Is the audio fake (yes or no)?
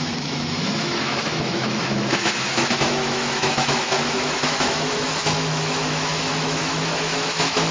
yes